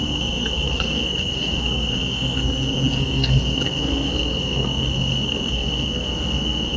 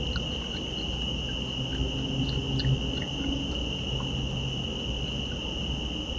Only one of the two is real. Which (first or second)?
second